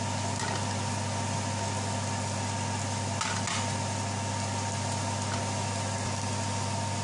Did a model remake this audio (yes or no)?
no